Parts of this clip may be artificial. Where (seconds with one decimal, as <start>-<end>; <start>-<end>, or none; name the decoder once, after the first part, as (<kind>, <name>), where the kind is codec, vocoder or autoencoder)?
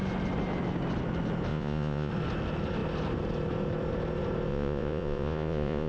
1.5-2.1 (vocoder, Vocos); 4.5-5.9